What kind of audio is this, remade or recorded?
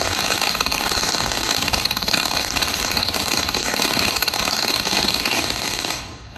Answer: remade